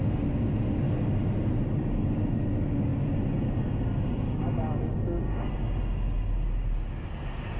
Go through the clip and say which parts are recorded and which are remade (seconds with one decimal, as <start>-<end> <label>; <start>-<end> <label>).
0.0-7.6 recorded